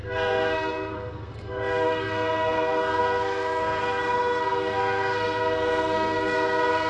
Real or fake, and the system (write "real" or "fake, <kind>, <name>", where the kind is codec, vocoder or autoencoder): fake, codec, SNAC